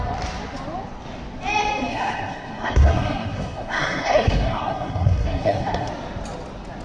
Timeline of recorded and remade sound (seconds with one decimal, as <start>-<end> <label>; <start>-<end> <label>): 0.0-1.9 recorded; 1.9-5.9 remade; 5.9-6.8 recorded